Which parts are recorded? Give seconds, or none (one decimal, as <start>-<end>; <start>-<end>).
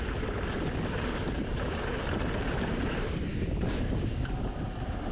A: 0.0-3.3; 4.3-5.1